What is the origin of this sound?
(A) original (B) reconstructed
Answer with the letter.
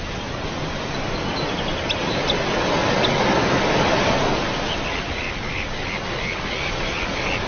A